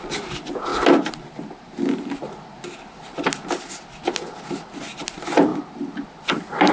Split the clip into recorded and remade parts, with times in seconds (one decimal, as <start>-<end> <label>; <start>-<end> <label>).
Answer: 0.0-6.7 recorded